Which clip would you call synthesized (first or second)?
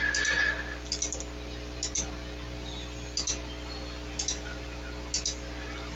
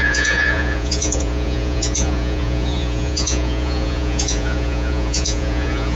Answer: second